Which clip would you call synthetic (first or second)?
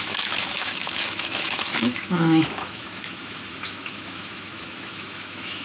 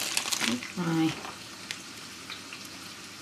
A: first